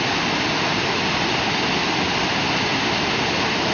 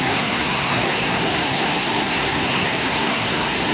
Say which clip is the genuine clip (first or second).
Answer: first